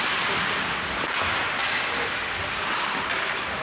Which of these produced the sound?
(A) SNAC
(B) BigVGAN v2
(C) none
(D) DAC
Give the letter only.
C